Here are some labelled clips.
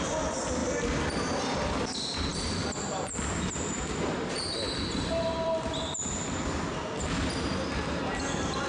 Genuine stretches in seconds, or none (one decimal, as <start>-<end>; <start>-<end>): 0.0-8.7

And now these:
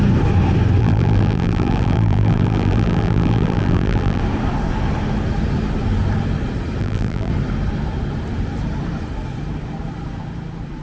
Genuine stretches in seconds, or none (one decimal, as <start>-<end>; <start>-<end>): 0.0-0.8; 4.2-6.8; 7.3-10.8

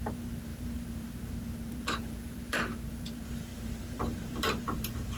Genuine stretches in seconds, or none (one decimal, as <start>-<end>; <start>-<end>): none

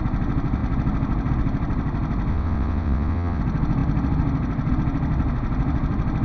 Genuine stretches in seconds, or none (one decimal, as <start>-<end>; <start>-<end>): 0.0-2.3; 3.4-6.2

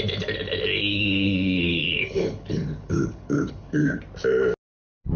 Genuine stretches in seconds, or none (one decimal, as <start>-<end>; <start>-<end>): 0.0-0.9; 4.0-5.2

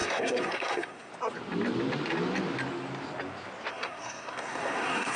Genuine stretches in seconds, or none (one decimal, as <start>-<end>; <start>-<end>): 1.1-3.7